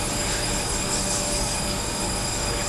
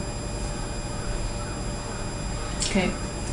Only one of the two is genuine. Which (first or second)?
second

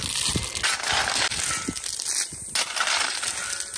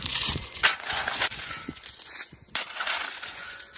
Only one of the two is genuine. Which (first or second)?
first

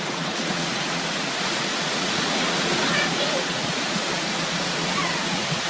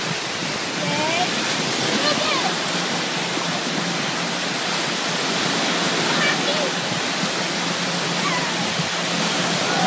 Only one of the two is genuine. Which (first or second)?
second